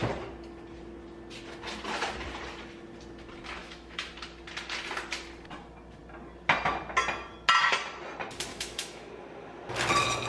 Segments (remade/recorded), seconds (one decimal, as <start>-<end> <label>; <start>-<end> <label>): 0.0-3.6 recorded; 3.6-4.1 remade; 4.1-8.5 recorded; 8.5-9.1 remade; 9.1-10.3 recorded